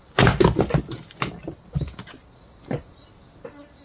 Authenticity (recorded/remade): recorded